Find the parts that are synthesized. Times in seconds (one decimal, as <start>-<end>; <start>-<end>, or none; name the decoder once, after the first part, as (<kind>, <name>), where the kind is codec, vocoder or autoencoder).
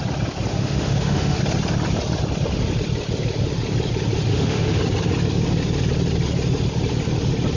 0.5-1.4 (autoencoder, DAC-VAE); 4.3-4.8